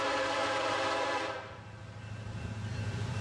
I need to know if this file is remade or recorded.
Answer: remade